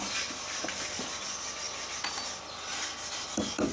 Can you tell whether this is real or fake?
real